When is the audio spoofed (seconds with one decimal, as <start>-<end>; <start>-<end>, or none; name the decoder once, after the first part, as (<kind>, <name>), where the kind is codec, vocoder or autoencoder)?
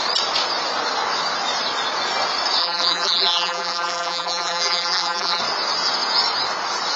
2.6-5.4 (vocoder, BigVGAN v2)